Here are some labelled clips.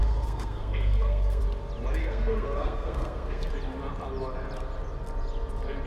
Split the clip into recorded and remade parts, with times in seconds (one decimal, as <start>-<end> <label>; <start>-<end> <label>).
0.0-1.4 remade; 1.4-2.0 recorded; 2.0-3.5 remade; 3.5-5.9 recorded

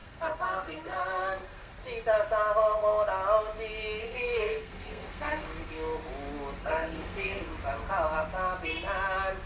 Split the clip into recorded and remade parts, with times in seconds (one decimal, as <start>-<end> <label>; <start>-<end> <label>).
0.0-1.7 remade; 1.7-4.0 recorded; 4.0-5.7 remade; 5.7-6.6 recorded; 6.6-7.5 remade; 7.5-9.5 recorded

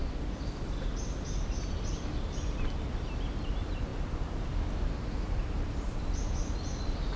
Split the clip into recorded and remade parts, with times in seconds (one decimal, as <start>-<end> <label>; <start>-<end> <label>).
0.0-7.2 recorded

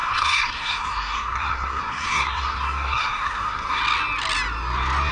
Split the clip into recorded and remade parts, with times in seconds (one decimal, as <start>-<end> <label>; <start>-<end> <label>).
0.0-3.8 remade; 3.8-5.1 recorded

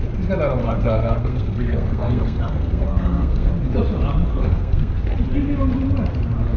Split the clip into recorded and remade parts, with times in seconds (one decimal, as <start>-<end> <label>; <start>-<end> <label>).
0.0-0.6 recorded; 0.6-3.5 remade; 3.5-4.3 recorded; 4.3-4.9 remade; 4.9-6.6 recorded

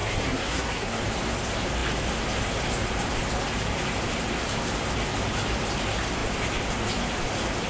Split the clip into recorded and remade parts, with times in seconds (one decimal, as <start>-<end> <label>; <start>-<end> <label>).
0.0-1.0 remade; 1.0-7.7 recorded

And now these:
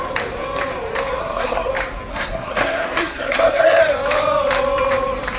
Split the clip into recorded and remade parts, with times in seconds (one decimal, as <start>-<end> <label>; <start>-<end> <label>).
0.0-1.2 recorded; 1.2-1.7 remade; 1.7-2.1 recorded; 2.1-3.8 remade; 3.8-5.4 recorded

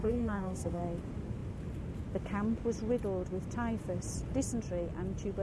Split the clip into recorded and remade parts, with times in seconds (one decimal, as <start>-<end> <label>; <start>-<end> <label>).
0.0-0.8 remade; 0.8-5.4 recorded